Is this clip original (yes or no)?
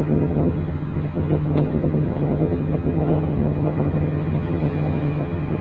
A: no